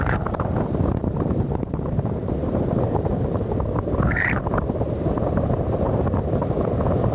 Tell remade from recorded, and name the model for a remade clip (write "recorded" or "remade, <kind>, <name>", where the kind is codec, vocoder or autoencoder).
remade, vocoder, BigVGAN v2